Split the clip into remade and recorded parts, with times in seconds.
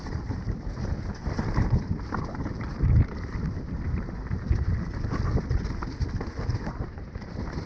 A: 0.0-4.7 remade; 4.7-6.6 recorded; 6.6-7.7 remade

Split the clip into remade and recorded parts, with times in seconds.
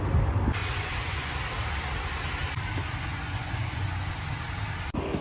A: 0.0-0.6 recorded; 0.6-1.3 remade; 1.3-2.8 recorded; 2.8-4.1 remade; 4.1-5.2 recorded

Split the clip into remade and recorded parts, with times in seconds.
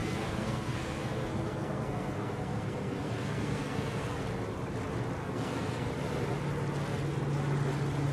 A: 0.0-4.2 remade; 4.2-5.2 recorded; 5.2-5.9 remade; 5.9-8.1 recorded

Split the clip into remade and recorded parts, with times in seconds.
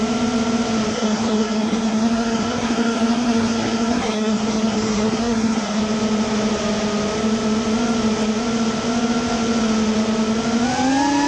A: 0.0-0.9 recorded; 0.9-5.8 remade; 5.8-11.3 recorded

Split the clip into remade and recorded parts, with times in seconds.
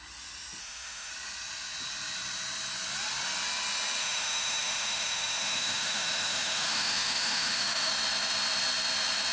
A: 0.0-0.6 recorded; 0.6-1.1 remade; 1.1-4.0 recorded; 4.0-7.9 remade; 7.9-9.3 recorded